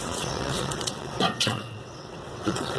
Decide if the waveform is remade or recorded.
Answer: remade